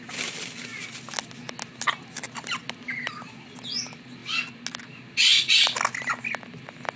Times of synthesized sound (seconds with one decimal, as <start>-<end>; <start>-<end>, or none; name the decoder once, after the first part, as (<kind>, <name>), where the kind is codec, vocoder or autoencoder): none